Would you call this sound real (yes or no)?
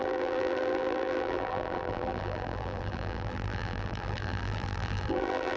no